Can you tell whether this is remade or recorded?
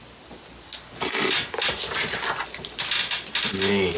recorded